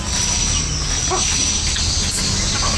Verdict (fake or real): real